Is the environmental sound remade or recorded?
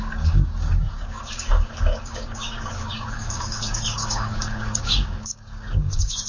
remade